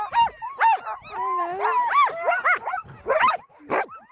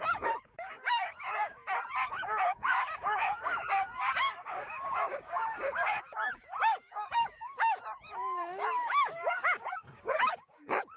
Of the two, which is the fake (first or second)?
second